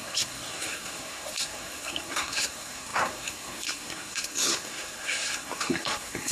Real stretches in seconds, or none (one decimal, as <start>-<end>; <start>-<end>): none